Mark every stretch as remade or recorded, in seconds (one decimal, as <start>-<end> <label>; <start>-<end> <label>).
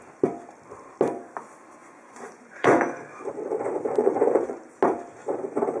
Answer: 0.0-1.8 recorded; 1.8-3.0 remade; 3.0-4.0 recorded; 4.0-4.6 remade; 4.6-5.8 recorded